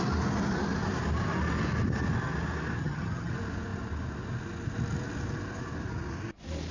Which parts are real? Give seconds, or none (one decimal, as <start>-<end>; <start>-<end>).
0.0-2.8; 3.3-6.7